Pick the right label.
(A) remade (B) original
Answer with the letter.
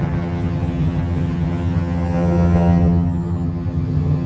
A